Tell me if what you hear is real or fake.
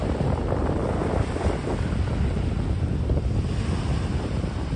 real